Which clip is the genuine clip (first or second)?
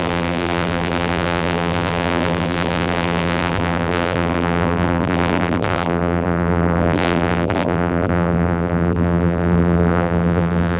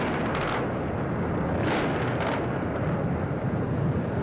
second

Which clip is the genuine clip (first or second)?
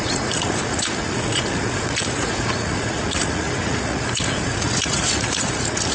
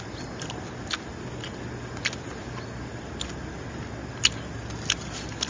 second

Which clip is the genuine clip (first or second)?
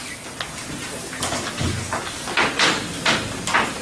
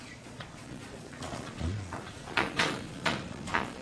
first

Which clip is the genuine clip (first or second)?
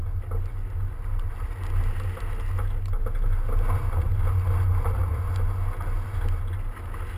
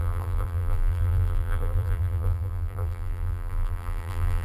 first